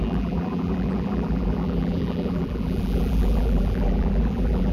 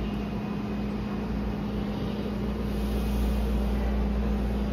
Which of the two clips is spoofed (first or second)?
first